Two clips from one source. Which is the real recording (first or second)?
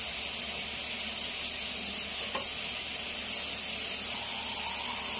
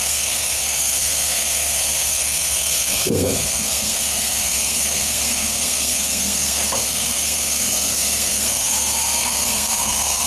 first